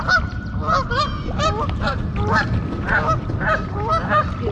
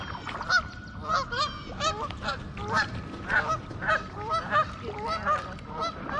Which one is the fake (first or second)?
first